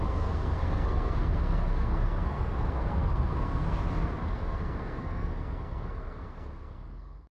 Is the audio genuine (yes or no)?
no